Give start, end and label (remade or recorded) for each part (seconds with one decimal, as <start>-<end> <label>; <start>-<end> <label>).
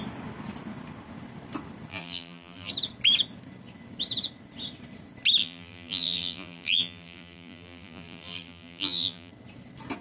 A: 0.0-1.9 recorded; 1.9-2.7 remade; 2.7-5.4 recorded; 5.4-9.3 remade; 9.3-10.0 recorded